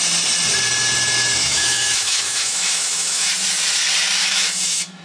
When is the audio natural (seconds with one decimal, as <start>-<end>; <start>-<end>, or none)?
0.0-1.4; 3.3-4.2